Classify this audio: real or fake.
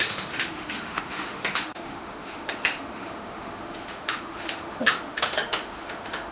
fake